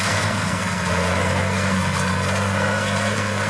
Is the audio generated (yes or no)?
yes